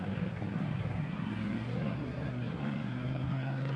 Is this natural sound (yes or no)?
no